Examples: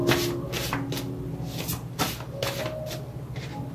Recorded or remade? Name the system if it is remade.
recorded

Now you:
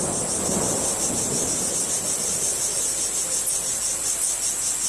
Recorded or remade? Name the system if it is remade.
recorded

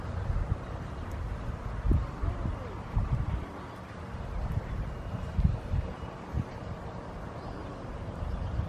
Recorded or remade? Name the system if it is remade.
recorded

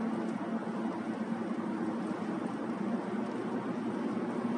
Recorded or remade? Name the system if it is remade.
recorded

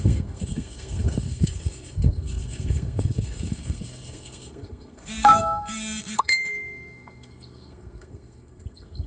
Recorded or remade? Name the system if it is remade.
remade, codec, SNAC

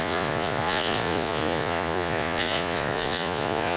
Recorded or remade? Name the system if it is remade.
remade, vocoder, Vocos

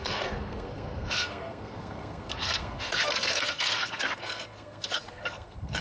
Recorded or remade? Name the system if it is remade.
remade, codec, SNAC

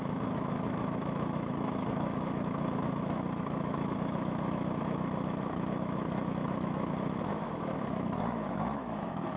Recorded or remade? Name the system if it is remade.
remade, autoencoder, DAC-VAE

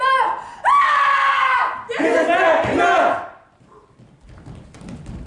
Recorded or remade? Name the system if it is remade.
recorded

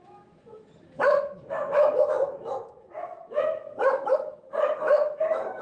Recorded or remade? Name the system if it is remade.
remade, autoencoder, DAC-VAE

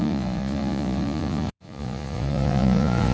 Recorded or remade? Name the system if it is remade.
remade, vocoder, Vocos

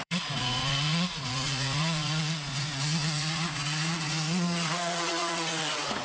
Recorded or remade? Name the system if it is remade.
remade, vocoder, Vocos